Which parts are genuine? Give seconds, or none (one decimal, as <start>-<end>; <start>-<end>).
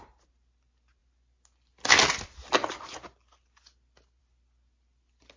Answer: 0.0-5.4